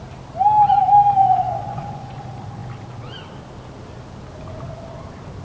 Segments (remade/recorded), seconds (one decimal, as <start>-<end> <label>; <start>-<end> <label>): 0.0-1.2 recorded; 1.2-2.2 remade; 2.2-5.4 recorded